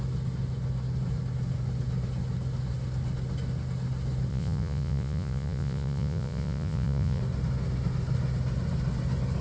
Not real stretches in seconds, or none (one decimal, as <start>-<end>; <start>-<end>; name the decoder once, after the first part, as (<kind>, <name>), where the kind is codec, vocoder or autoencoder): 4.3-7.2 (vocoder, Vocos)